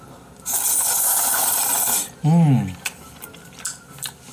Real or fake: real